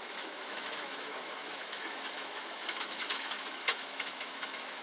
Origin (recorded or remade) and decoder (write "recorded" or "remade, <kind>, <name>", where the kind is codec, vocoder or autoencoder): remade, autoencoder, DAC-VAE